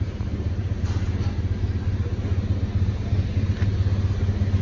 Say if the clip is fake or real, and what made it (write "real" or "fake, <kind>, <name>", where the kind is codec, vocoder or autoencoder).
real